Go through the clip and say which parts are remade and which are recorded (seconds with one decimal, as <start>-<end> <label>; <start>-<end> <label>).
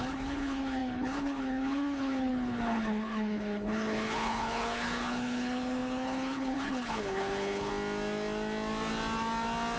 0.0-7.7 remade; 7.7-9.8 recorded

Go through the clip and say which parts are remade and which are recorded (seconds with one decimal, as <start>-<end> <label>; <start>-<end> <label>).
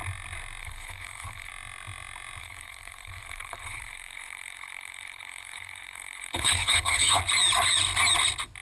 0.0-0.6 recorded; 0.6-1.5 remade; 1.5-2.4 recorded; 2.4-7.2 remade; 7.2-8.6 recorded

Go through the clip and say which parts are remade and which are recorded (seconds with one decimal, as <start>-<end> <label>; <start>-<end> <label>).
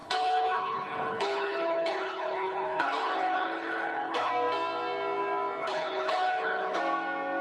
0.0-4.3 remade; 4.3-5.6 recorded; 5.6-6.8 remade; 6.8-7.4 recorded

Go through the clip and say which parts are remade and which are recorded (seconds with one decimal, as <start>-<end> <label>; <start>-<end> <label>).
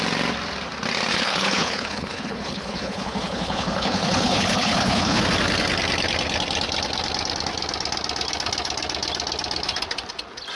0.0-1.1 recorded; 1.1-5.2 remade; 5.2-10.6 recorded